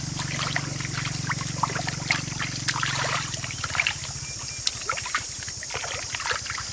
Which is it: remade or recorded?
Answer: recorded